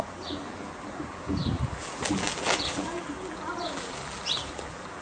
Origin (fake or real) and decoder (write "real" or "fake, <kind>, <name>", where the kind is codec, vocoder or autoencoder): fake, vocoder, BigVGAN v2